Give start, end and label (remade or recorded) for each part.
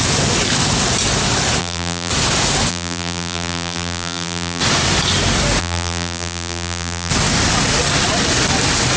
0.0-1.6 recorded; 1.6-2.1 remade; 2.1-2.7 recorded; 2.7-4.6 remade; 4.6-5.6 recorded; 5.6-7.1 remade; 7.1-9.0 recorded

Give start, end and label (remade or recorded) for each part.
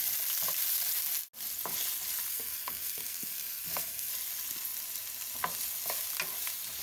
0.0-2.3 recorded; 2.3-4.1 remade; 4.1-6.8 recorded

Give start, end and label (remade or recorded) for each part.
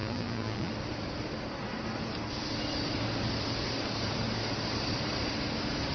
0.0-0.7 remade; 0.7-5.9 recorded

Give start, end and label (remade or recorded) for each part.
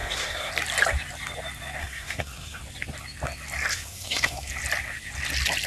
0.0-0.5 remade; 0.5-1.8 recorded; 1.8-2.6 remade; 2.6-3.7 recorded; 3.7-4.5 remade; 4.5-5.7 recorded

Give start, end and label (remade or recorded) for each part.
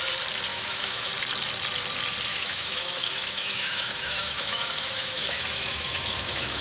0.0-0.5 recorded; 0.5-1.1 remade; 1.1-2.3 recorded; 2.3-6.6 remade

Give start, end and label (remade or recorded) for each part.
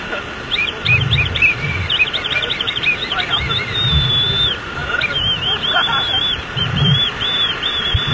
0.0-8.1 recorded